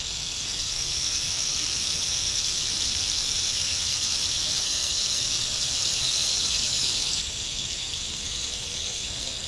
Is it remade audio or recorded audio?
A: remade